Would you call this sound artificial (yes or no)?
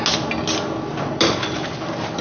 no